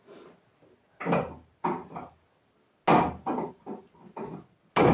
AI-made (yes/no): no